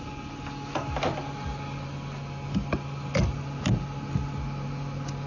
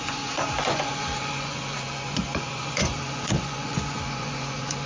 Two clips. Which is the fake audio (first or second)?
second